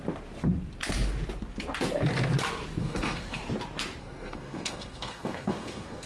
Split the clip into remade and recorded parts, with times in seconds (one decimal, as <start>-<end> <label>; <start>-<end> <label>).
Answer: 0.0-2.8 recorded; 2.8-3.4 remade; 3.4-4.0 recorded; 4.0-6.1 remade